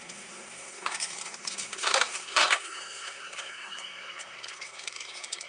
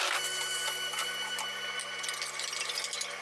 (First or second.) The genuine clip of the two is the second